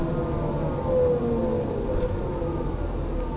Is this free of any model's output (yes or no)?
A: yes